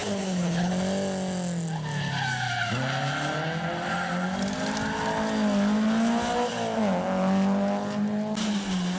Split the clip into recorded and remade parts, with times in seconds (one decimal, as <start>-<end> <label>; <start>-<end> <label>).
0.0-0.7 remade; 0.7-9.0 recorded